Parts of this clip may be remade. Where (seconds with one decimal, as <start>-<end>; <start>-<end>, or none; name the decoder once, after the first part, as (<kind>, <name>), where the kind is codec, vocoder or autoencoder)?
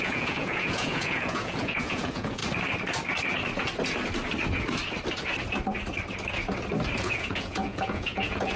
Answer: 0.0-2.4 (vocoder, Vocos); 7.0-8.6